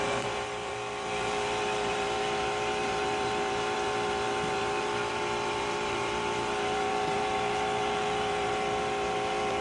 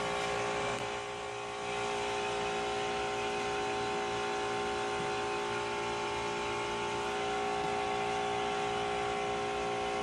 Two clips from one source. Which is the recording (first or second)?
second